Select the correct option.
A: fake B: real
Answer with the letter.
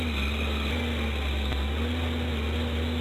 B